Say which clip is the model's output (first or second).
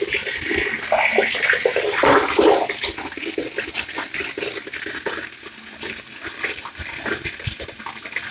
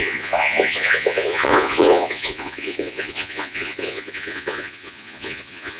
second